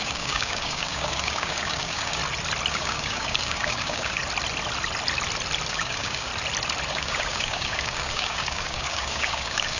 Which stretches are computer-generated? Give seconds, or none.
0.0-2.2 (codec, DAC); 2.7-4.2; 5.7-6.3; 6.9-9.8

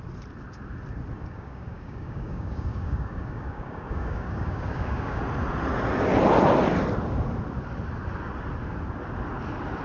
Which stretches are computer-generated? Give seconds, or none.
1.2-5.2 (codec, DAC)